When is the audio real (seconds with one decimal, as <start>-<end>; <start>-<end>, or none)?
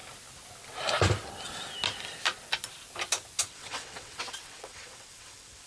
0.0-3.4